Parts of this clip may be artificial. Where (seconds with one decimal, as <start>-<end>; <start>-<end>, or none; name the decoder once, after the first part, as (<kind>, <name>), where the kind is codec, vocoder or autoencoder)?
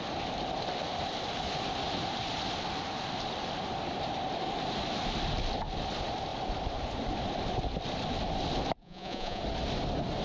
8.8-9.4 (vocoder, Vocos)